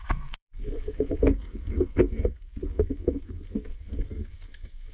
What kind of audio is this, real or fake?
fake